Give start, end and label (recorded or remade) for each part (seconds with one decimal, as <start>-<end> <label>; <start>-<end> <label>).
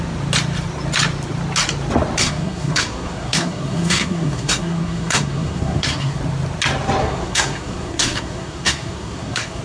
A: 0.0-2.2 recorded; 2.2-6.2 remade; 6.2-7.0 recorded; 7.0-9.6 remade